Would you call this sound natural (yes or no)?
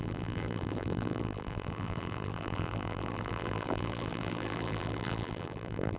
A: no